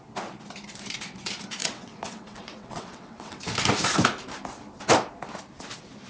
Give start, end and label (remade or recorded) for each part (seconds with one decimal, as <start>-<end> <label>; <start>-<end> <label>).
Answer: 0.0-1.6 recorded; 1.6-3.4 remade; 3.4-6.1 recorded